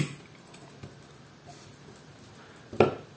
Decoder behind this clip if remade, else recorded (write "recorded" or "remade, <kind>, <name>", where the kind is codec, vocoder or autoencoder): recorded